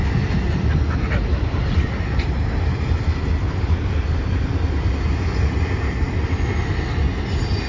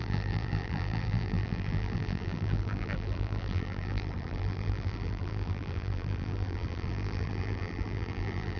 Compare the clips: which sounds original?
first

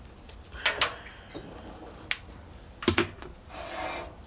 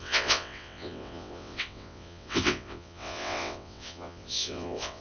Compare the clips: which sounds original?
first